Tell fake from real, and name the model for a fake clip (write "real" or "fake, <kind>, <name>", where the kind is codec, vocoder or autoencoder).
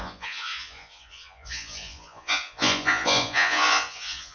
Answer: fake, vocoder, Vocos